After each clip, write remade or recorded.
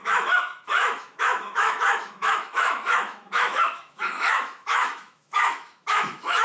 remade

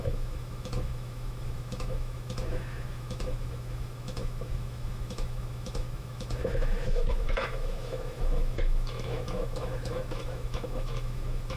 remade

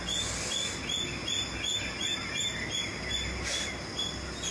recorded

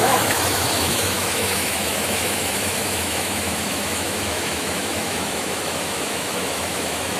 remade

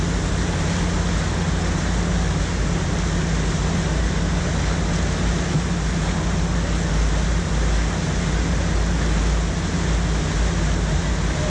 recorded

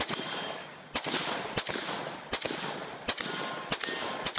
recorded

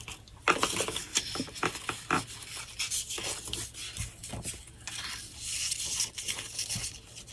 recorded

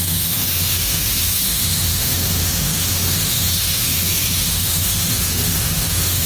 remade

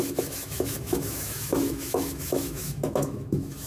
remade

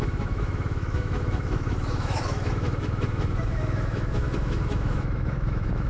remade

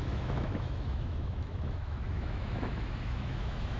remade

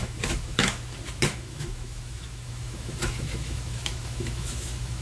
remade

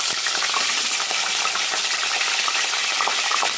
recorded